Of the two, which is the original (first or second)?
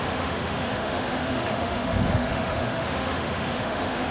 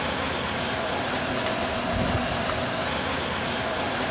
second